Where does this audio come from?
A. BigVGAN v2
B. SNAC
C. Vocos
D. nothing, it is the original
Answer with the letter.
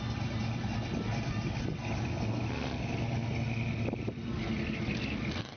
D